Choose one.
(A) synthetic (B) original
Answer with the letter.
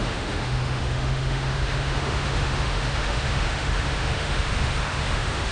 A